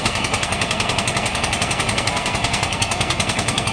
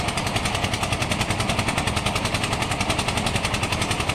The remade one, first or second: first